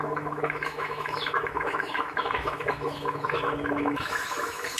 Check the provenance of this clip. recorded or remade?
remade